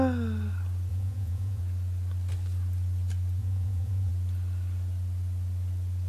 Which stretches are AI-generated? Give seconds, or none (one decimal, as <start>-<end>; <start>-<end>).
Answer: 0.9-1.6; 3.4-4.1